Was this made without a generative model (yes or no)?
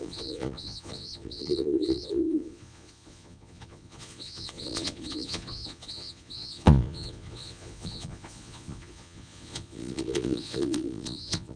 no